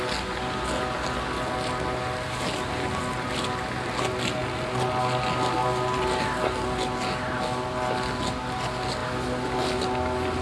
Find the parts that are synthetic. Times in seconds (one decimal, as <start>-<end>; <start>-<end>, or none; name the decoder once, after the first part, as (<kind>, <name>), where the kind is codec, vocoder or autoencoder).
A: none